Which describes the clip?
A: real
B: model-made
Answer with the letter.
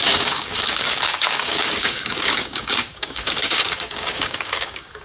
B